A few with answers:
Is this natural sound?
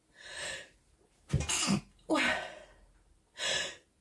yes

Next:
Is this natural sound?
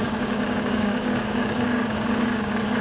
no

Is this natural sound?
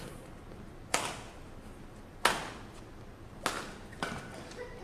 yes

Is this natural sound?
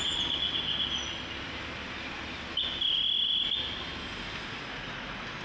yes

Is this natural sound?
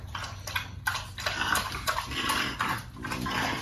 yes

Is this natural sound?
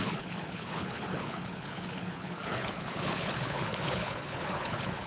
no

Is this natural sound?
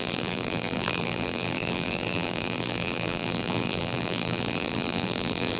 no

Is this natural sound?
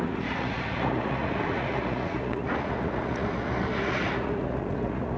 no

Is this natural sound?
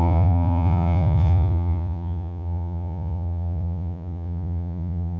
no